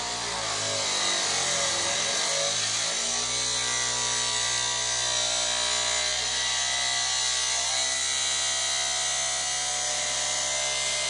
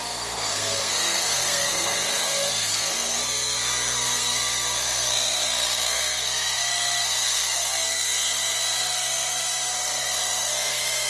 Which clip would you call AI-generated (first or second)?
second